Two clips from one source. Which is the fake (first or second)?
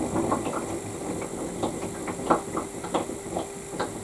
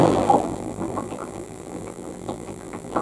second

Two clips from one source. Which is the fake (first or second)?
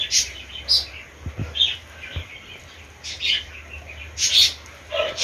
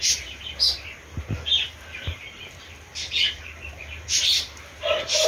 second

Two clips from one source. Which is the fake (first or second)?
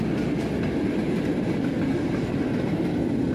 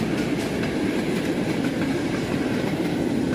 second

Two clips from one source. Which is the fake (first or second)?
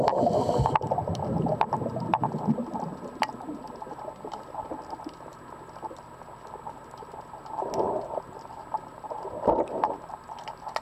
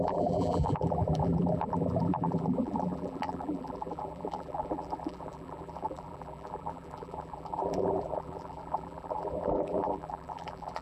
second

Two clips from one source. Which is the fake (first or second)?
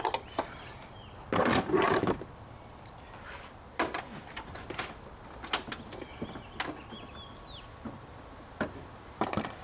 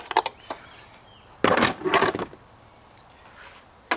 first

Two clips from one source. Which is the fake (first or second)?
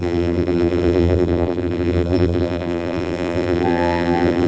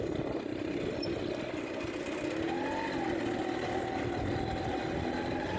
first